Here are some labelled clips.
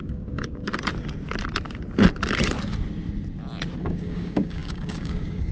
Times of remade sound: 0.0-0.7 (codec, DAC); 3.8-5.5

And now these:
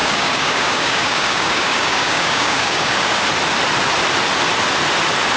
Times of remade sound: 0.0-3.2 (codec, DAC)

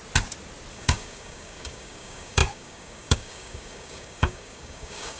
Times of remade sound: 0.7-5.2 (codec, DAC)

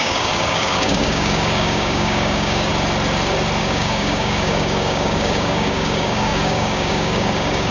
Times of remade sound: 0.0-2.7 (codec, DAC); 3.6-7.7

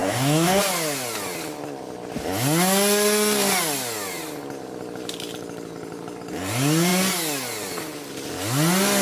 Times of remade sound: 0.0-0.6 (codec, DAC)